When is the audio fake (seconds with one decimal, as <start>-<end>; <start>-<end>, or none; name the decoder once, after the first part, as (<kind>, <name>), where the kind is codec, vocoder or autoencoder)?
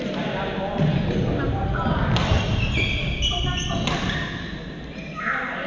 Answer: none